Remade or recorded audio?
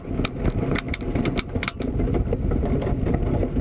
recorded